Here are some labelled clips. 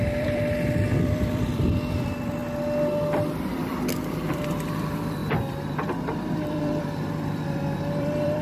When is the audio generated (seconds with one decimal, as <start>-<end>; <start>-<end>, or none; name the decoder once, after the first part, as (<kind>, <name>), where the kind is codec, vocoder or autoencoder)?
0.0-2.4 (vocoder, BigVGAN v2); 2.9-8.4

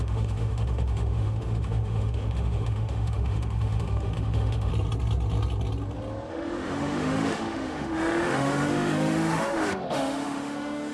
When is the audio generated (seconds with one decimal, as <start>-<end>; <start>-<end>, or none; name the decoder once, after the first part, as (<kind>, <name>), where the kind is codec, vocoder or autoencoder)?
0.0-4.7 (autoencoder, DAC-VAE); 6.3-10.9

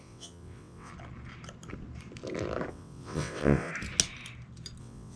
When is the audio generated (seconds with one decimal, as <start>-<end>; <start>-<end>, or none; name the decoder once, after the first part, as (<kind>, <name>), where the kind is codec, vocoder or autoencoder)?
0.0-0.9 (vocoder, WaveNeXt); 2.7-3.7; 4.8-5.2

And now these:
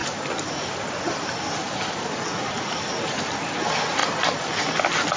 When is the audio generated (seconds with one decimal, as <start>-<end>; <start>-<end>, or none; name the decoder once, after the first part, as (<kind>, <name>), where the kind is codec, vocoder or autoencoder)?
none

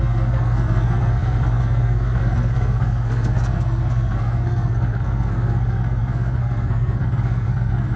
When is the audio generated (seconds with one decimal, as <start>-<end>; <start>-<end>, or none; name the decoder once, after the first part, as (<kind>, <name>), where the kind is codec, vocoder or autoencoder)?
0.0-8.0 (codec, SNAC)

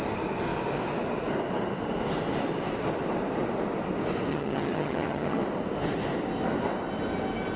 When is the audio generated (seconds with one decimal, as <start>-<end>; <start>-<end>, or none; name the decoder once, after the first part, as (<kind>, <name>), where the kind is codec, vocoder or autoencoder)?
4.3-5.4 (vocoder, HiFi-GAN)

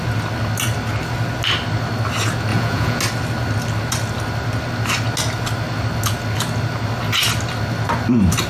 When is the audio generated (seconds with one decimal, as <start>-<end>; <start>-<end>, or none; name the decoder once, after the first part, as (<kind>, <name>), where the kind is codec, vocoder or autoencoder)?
2.5-3.0 (vocoder, Vocos)